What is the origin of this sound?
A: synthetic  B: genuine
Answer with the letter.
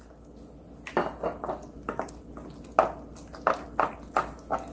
B